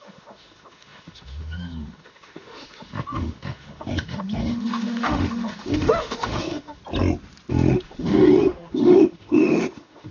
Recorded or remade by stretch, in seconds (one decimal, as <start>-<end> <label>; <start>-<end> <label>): 0.0-6.8 remade; 6.8-7.5 recorded; 7.5-10.1 remade